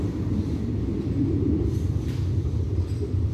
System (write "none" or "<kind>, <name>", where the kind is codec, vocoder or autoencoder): none